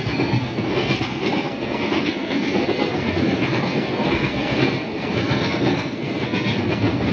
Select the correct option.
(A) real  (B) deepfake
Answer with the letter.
B